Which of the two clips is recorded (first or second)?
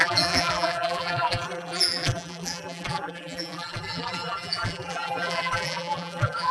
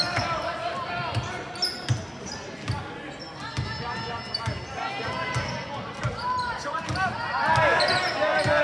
second